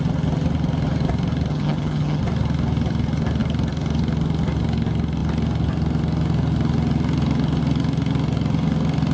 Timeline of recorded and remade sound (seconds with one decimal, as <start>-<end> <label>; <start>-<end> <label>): 0.0-1.5 recorded; 1.5-2.2 remade; 2.2-9.1 recorded